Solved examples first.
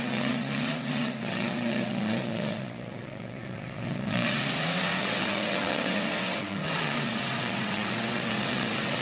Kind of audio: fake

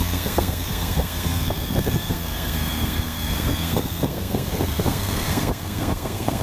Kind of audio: fake